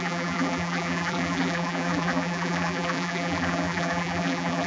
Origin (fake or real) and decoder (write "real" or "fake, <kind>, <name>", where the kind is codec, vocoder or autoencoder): fake, vocoder, BigVGAN v2